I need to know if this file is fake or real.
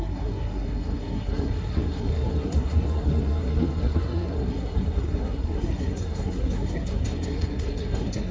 fake